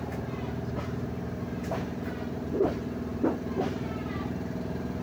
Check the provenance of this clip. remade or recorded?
remade